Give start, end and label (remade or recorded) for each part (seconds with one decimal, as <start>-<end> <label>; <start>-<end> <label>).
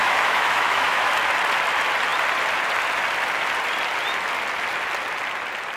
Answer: 0.0-1.1 remade; 1.1-5.8 recorded